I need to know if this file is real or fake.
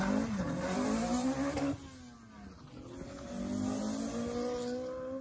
real